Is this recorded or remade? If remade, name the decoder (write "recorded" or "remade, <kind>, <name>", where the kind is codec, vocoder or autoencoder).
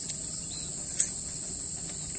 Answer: recorded